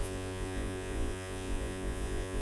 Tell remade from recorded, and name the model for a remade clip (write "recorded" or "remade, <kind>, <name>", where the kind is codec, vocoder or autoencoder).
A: remade, vocoder, Vocos